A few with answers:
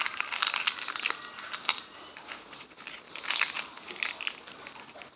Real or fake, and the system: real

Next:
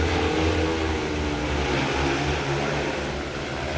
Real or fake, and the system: real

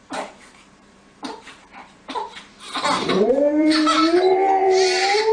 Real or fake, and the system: fake, vocoder, BigVGAN v2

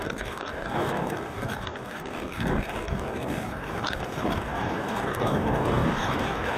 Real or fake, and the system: fake, codec, DAC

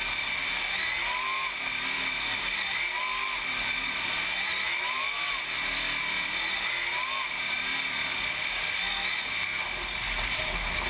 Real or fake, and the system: real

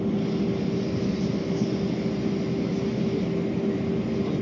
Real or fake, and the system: real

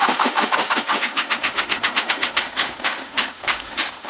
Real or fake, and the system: fake, autoencoder, DAC-VAE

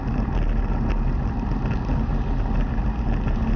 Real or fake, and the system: real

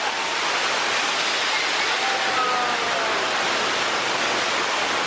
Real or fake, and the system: real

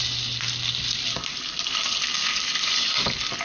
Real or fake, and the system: real